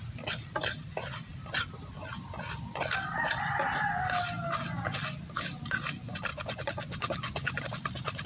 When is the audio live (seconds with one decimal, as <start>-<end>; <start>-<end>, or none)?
0.0-6.3; 7.6-8.3